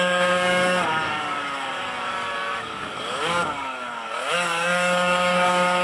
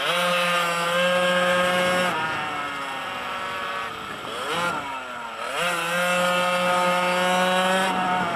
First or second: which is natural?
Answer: second